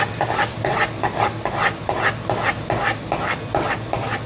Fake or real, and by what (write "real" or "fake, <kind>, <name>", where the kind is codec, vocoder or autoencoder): real